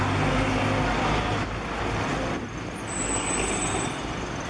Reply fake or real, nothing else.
real